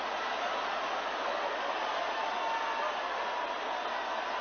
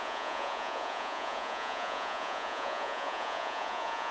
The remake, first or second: second